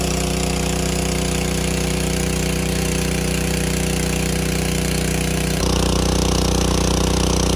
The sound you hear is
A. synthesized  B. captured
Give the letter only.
A